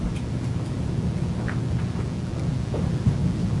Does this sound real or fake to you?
fake